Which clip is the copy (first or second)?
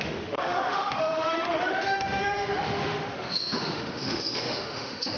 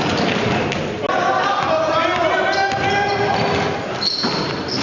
first